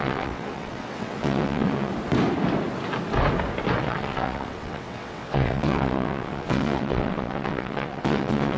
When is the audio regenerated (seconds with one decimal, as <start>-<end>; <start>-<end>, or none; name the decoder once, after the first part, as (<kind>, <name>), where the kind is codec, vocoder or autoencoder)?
0.0-1.9 (vocoder, WaveNeXt); 3.8-8.6